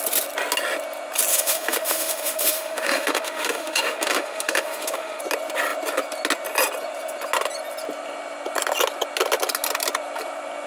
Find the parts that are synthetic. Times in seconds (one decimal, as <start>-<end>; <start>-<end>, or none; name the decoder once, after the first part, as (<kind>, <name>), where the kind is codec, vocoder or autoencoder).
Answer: 1.3-5.2 (autoencoder, DAC-VAE)